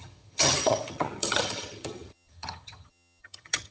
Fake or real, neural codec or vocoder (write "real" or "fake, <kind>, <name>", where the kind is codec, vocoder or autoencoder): fake, vocoder, HiFi-GAN